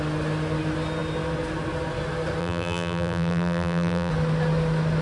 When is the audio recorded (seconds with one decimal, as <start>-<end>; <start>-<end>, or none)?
0.0-2.4; 4.1-5.0